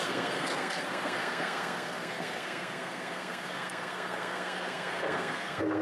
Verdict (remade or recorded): remade